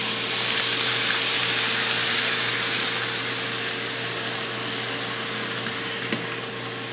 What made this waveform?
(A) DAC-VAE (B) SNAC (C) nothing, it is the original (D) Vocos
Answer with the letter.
C